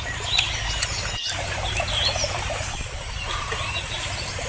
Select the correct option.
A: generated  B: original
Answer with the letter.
B